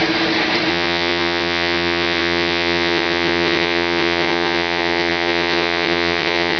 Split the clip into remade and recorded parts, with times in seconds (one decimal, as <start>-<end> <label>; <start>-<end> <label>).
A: 0.0-0.7 recorded; 0.7-6.6 remade

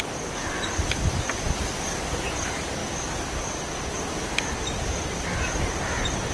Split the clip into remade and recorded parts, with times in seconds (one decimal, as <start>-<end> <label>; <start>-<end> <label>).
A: 0.0-6.3 recorded

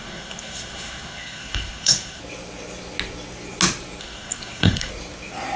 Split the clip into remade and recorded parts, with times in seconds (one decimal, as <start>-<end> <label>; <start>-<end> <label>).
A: 0.0-2.2 remade; 2.2-4.0 recorded; 4.0-4.9 remade; 4.9-5.6 recorded

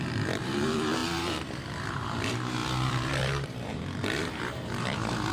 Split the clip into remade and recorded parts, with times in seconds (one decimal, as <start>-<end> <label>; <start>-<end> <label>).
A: 0.0-5.3 remade

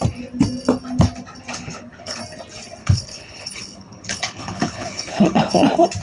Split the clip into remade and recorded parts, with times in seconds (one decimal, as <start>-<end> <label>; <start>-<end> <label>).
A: 0.0-1.5 recorded; 1.5-2.2 remade; 2.2-2.8 recorded; 2.8-5.5 remade; 5.5-6.0 recorded

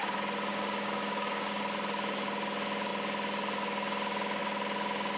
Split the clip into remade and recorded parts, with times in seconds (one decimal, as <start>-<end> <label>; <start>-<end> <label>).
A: 0.0-0.5 recorded; 0.5-1.6 remade; 1.6-5.2 recorded

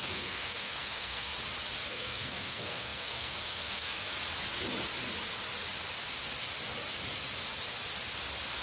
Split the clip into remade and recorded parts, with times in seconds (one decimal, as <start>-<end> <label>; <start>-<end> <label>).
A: 0.0-1.3 remade; 1.3-1.9 recorded; 1.9-4.1 remade; 4.1-8.6 recorded

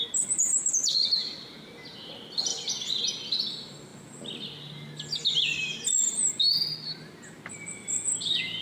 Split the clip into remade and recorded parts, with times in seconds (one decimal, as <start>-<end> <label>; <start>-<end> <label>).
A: 0.0-2.5 recorded; 2.5-3.0 remade; 3.0-8.6 recorded